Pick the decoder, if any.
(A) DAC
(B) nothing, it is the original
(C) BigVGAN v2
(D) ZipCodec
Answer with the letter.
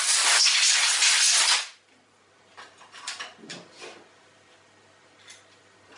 C